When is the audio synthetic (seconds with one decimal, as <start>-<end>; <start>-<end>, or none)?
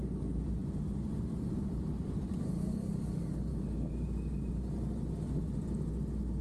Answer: 3.5-4.5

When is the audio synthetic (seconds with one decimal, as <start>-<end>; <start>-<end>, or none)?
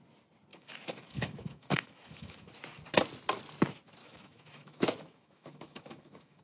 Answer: 0.5-2.5; 4.0-6.4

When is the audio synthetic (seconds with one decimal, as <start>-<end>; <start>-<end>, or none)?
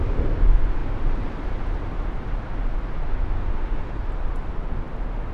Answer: 3.4-4.0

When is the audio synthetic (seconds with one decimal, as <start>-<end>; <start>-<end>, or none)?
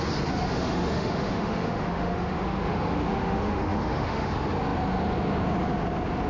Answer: 0.5-4.3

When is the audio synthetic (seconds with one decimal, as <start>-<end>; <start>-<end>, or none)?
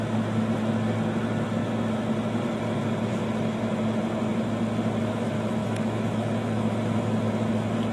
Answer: 5.6-7.3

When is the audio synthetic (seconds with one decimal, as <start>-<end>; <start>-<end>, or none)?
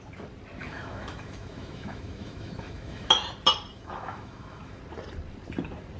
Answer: 0.6-3.1; 3.7-4.8